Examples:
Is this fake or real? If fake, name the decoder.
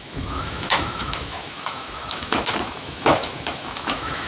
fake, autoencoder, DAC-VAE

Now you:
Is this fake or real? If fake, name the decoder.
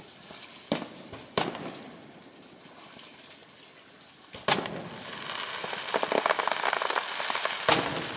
real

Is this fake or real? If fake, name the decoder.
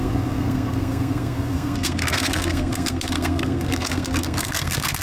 fake, codec, SNAC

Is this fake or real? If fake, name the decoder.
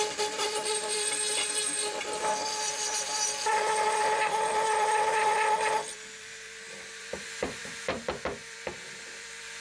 fake, vocoder, BigVGAN v2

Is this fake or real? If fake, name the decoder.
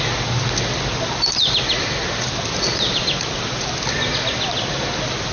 real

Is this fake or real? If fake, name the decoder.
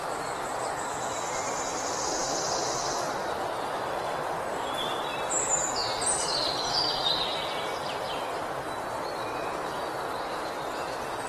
real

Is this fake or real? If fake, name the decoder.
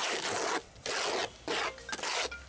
real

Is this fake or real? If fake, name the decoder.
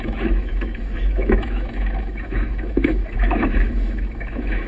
fake, autoencoder, DAC-VAE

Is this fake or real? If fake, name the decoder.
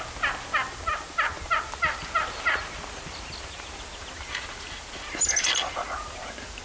real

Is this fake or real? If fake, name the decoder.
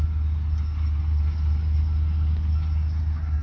real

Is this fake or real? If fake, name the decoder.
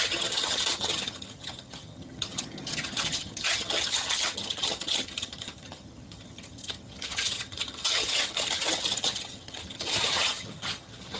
fake, vocoder, HiFi-GAN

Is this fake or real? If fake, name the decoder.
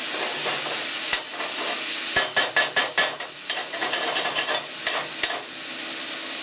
real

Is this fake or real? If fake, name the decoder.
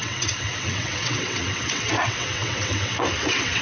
fake, vocoder, WaveNeXt